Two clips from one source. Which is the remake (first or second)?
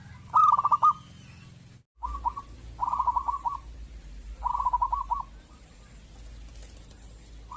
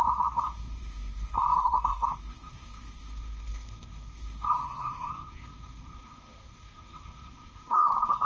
second